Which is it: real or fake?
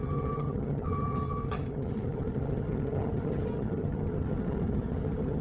fake